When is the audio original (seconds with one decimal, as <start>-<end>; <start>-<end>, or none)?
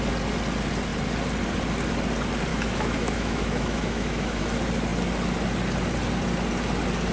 0.0-2.5; 4.4-7.1